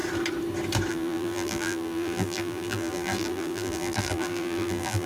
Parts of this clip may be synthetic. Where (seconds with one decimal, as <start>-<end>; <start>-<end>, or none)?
0.9-5.1